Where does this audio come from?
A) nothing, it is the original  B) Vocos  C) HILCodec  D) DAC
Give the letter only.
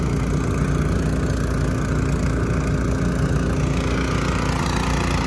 A